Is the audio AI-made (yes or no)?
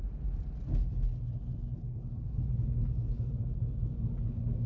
no